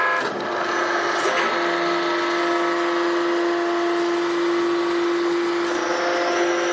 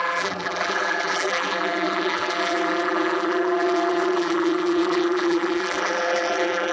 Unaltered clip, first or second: first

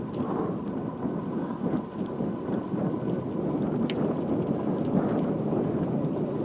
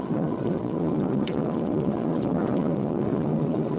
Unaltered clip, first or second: first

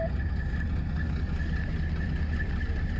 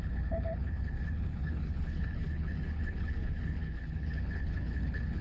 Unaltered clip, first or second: first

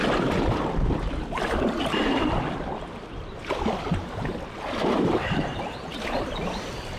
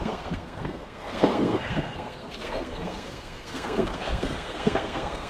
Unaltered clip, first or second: first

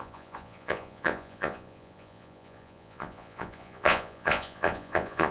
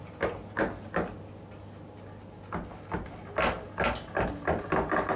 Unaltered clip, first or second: second